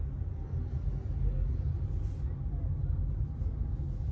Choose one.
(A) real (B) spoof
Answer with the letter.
A